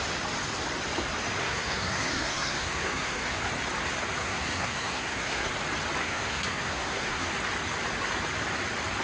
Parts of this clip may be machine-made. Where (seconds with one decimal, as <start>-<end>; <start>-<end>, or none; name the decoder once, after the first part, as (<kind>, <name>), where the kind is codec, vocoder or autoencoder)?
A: 1.4-3.4 (codec, SNAC); 4.2-5.5; 6.0-7.3

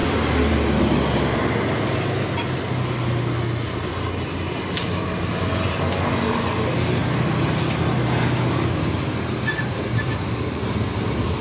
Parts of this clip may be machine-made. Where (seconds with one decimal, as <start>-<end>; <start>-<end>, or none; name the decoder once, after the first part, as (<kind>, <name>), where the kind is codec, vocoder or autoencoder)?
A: none

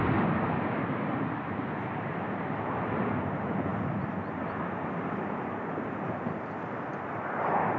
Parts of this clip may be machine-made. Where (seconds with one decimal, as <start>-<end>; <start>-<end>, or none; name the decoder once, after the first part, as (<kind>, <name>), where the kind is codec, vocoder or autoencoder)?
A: none

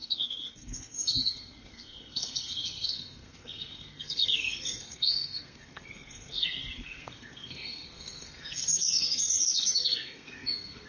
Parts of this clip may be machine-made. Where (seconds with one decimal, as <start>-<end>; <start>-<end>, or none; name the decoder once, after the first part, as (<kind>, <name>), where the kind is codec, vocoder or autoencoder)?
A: 0.0-10.9 (codec, SNAC)

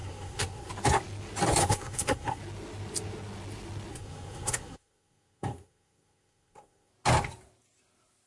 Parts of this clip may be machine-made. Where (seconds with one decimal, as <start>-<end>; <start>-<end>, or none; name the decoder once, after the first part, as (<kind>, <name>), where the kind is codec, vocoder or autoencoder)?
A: 0.0-0.7 (codec, SNAC); 1.6-2.4; 3.9-6.9

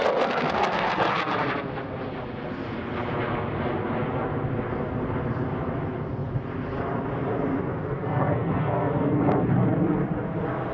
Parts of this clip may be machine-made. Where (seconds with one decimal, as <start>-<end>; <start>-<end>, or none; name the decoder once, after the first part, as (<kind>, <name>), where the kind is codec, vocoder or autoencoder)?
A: 0.0-0.9 (codec, SNAC); 7.7-9.5

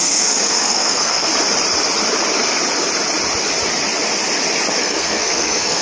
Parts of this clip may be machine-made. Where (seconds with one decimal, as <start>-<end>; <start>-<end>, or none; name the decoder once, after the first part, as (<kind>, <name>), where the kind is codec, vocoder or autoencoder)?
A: 0.0-1.3 (codec, SNAC); 4.8-5.8

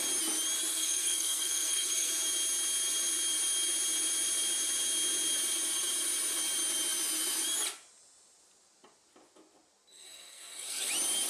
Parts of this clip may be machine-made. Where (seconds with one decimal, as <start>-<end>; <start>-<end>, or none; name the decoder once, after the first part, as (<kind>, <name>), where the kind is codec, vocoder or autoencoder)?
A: 0.7-2.1 (codec, SNAC); 9.9-10.9